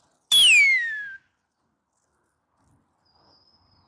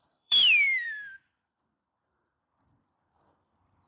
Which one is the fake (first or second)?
second